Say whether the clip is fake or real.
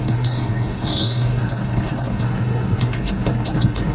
fake